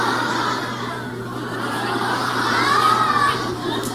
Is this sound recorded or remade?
remade